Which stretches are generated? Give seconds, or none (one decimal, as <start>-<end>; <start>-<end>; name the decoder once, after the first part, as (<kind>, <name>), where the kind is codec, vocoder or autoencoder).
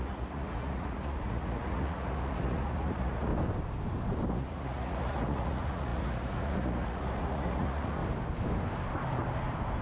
0.0-3.3 (vocoder, Vocos); 4.3-8.0